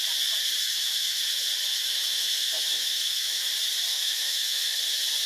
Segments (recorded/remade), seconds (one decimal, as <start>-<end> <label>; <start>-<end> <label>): 0.0-0.6 recorded; 0.6-1.2 remade; 1.2-1.7 recorded; 1.7-3.5 remade; 3.5-3.9 recorded; 3.9-4.8 remade; 4.8-5.3 recorded